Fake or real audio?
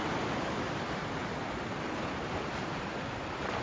real